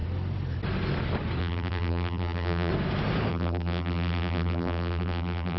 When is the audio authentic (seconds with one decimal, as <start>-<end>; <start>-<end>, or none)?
0.0-1.4; 2.7-3.3